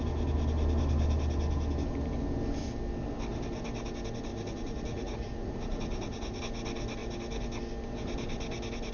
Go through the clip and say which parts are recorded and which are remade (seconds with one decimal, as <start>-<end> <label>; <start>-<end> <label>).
0.0-4.3 recorded; 4.3-6.4 remade; 6.4-8.9 recorded

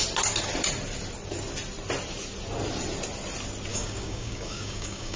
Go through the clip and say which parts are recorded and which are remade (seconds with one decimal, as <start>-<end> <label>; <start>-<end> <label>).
0.0-3.7 recorded; 3.7-5.2 remade

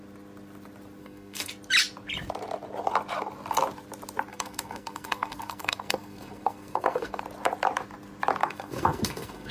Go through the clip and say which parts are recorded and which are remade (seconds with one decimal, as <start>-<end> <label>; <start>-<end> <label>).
0.0-1.0 recorded; 1.0-1.5 remade; 1.5-4.3 recorded; 4.3-7.2 remade; 7.2-8.4 recorded; 8.4-9.5 remade

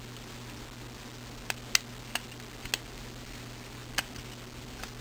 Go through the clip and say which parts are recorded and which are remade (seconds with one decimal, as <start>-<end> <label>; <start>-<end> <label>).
0.0-5.0 recorded

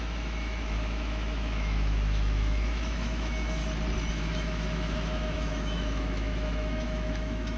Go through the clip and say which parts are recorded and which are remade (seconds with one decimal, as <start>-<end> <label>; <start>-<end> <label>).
0.0-3.6 remade; 3.6-4.1 recorded; 4.1-7.6 remade

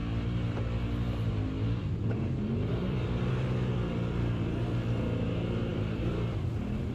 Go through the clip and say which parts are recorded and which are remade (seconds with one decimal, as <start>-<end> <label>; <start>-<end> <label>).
0.0-2.7 recorded; 2.7-3.3 remade; 3.3-5.7 recorded; 5.7-6.4 remade; 6.4-6.9 recorded

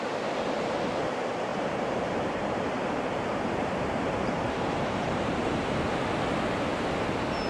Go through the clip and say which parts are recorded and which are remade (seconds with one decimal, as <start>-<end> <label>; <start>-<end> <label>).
0.0-1.5 recorded; 1.5-5.8 remade; 5.8-7.5 recorded

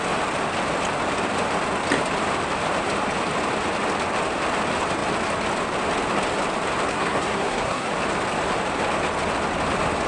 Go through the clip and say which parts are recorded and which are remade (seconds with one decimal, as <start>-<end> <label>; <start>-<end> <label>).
0.0-6.9 recorded; 6.9-7.9 remade; 7.9-10.1 recorded